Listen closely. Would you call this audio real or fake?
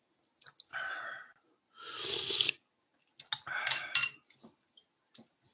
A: real